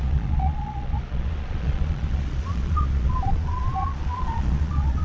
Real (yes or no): no